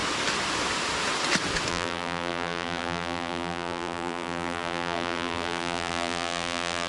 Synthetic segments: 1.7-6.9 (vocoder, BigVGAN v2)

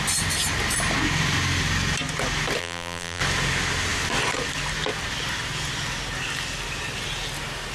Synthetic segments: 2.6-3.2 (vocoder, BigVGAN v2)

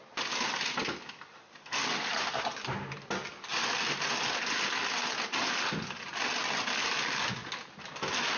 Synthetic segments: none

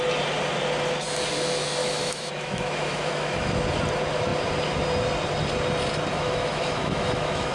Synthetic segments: 1.8-3.5 (autoencoder, DAC-VAE); 6.1-7.5

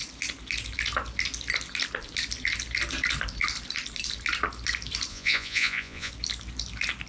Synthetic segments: 5.1-6.1 (vocoder, Vocos)

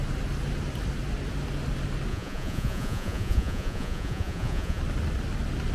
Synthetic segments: 2.1-4.8 (vocoder, Vocos)